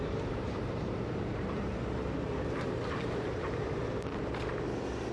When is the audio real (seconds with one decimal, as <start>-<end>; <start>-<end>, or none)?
1.7-2.6; 4.1-5.1